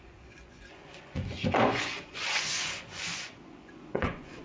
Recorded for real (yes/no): no